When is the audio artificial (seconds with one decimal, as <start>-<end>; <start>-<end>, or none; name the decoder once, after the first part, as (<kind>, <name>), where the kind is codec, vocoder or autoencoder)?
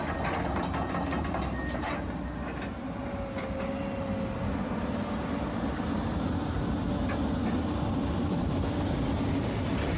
none